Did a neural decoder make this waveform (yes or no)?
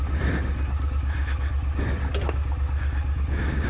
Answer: no